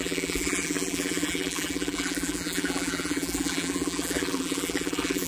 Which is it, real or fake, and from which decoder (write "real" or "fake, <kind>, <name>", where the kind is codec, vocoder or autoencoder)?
fake, vocoder, BigVGAN v2